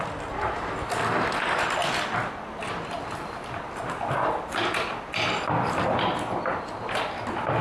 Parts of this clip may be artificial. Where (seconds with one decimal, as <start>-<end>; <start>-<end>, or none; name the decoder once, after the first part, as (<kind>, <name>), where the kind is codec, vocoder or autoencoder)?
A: none